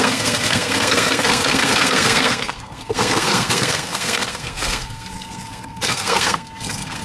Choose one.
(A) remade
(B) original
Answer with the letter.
A